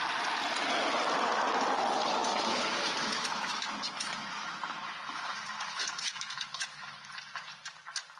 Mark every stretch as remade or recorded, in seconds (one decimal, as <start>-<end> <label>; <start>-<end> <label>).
0.0-2.2 recorded; 2.2-7.1 remade; 7.1-8.2 recorded